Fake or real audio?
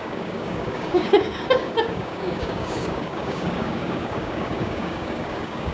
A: fake